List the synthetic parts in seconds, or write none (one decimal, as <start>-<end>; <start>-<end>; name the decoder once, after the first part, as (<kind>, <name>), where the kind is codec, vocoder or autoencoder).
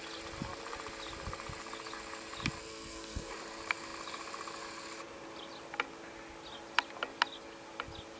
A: 2.6-3.3 (codec, SNAC)